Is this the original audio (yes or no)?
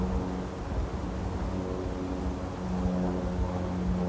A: yes